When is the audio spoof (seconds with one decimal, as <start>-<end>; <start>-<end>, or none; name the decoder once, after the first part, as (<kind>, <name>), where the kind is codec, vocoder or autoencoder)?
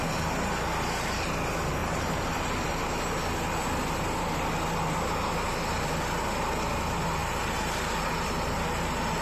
1.8-2.8 (vocoder, BigVGAN v2); 7.2-8.1